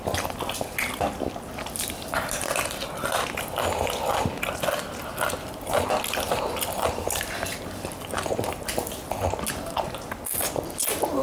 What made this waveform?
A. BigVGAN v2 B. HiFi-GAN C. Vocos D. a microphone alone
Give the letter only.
D